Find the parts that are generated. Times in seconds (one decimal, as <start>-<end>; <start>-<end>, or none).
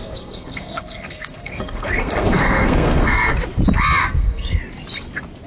0.0-3.3; 4.0-4.6